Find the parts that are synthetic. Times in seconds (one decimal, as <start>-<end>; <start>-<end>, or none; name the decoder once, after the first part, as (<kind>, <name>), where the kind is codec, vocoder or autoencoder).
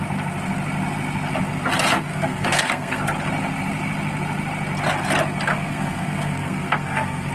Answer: 2.1-3.0 (codec, SNAC); 5.5-7.3